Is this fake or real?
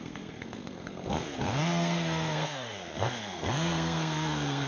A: fake